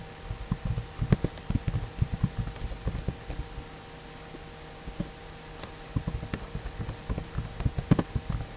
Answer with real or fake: real